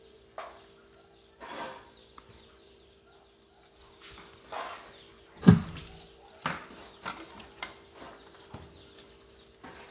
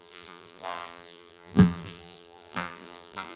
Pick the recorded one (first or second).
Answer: first